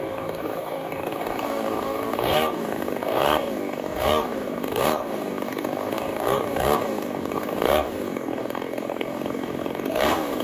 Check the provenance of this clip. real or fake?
fake